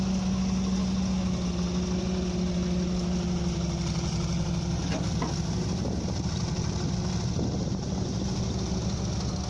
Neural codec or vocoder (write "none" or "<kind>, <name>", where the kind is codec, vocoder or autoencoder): none